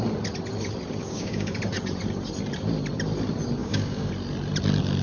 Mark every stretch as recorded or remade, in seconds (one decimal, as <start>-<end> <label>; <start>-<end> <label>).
0.0-1.0 recorded; 1.0-1.6 remade; 1.6-3.6 recorded; 3.6-4.1 remade; 4.1-5.0 recorded